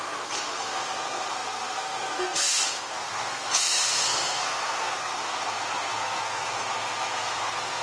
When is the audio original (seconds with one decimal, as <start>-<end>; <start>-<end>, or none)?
none